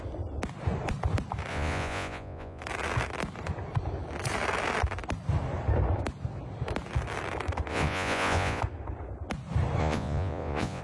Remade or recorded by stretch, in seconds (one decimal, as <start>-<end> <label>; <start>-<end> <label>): 0.0-1.5 recorded; 1.5-2.6 remade; 2.6-7.7 recorded; 7.7-8.6 remade; 8.6-9.8 recorded; 9.8-10.8 remade